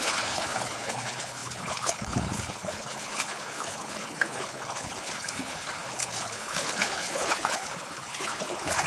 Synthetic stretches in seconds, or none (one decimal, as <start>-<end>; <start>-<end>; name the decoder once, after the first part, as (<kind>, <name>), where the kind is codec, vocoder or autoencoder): 0.0-8.9 (codec, HILCodec)